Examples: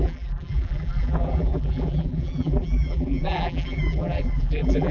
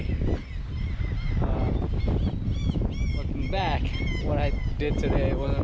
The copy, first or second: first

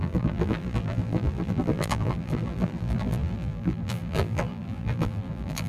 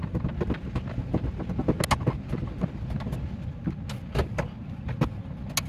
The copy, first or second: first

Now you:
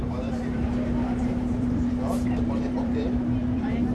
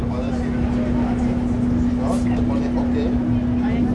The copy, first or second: first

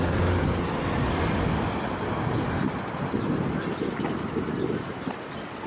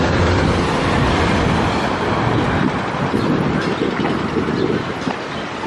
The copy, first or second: second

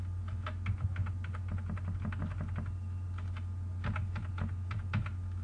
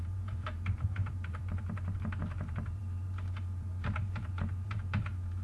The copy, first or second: second